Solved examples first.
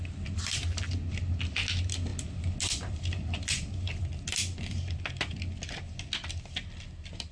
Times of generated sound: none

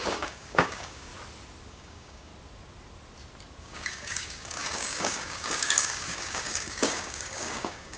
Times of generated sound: 0.0-1.1; 1.7-2.3; 3.6-8.0

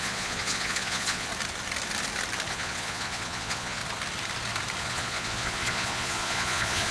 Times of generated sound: 0.0-1.3; 2.5-3.8; 4.8-6.9

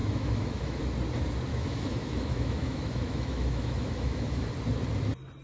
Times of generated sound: 0.0-0.8; 1.5-4.5

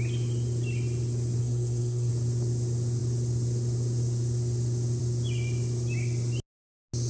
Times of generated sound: 1.4-2.1

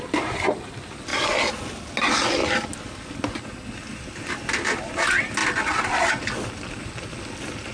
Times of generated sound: none

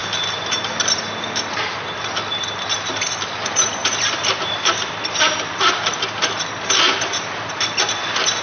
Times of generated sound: none

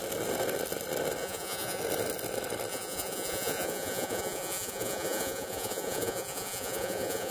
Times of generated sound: 1.2-1.8; 2.7-7.3